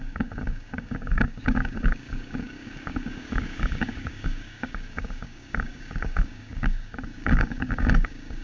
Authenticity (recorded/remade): remade